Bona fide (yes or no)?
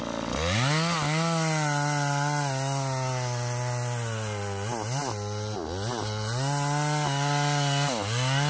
yes